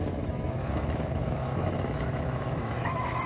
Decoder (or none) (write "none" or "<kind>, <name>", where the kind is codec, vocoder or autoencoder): autoencoder, DAC-VAE